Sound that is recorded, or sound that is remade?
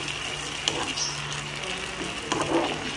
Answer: recorded